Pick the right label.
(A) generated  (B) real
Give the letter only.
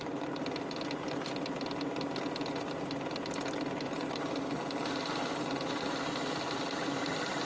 B